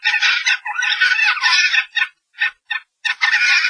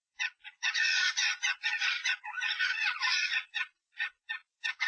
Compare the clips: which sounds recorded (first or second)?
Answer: first